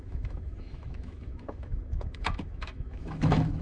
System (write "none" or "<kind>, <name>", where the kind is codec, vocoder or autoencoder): autoencoder, DAC-VAE